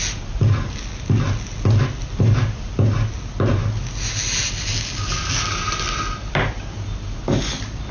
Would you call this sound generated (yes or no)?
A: no